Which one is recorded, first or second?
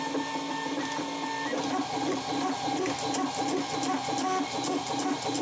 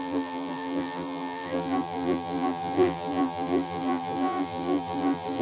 first